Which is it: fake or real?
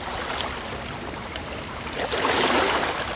real